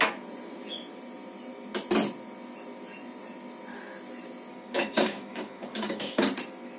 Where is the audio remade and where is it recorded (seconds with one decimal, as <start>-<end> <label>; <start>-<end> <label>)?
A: 0.0-4.5 recorded; 4.5-6.3 remade; 6.3-6.8 recorded